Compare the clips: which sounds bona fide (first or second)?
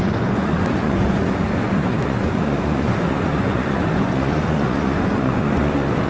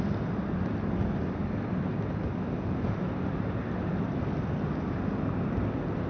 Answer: second